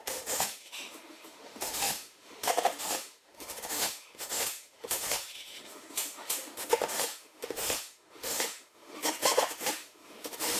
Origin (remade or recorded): remade